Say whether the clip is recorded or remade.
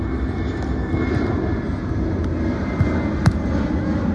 recorded